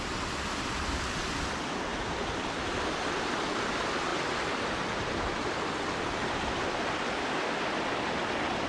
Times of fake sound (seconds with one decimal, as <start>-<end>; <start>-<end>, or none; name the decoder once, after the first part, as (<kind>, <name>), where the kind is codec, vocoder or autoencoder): none